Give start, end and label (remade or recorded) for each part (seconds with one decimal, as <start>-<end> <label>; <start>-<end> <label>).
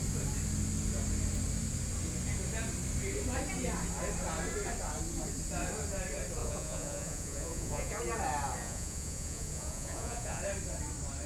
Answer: 0.0-6.4 recorded; 6.4-8.0 remade; 8.0-8.6 recorded; 8.6-10.4 remade; 10.4-11.3 recorded